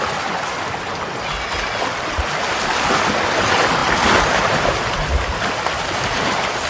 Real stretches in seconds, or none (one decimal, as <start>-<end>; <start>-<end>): 0.0-3.8; 4.7-6.7